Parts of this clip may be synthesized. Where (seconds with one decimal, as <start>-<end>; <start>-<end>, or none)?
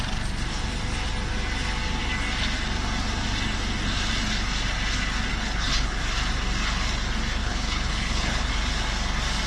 5.3-6.0; 7.4-8.5